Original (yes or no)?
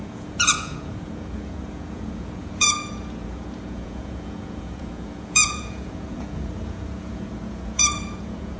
no